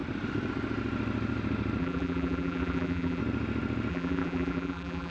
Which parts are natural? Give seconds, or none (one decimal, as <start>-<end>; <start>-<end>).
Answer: 0.0-1.8; 3.2-3.9